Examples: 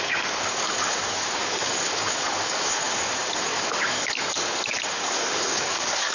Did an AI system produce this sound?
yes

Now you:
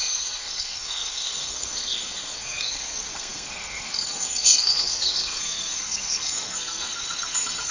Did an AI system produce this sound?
yes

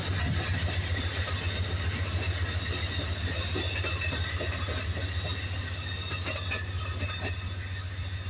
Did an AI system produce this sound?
no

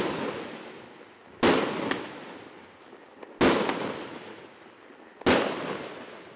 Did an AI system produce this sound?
no